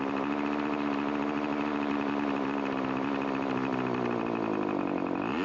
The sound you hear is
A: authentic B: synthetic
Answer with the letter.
A